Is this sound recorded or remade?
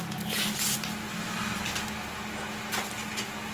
recorded